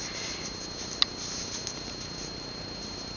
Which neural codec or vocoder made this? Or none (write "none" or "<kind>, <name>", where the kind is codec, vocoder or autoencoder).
none